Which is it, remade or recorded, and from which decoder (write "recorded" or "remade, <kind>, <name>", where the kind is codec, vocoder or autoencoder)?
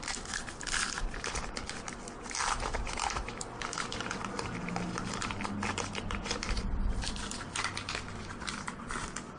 recorded